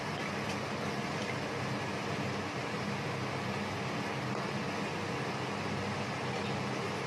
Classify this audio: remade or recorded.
recorded